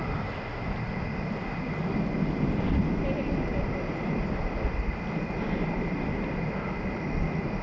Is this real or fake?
real